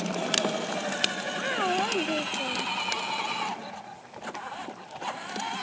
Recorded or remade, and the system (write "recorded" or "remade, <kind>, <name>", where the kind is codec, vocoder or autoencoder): recorded